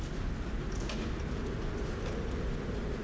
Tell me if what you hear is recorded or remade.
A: recorded